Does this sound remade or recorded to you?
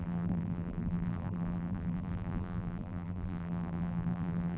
remade